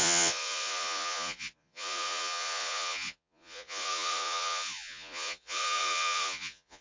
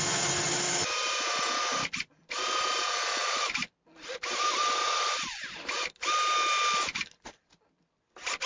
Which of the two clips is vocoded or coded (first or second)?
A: first